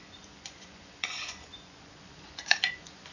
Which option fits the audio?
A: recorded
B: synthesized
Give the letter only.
B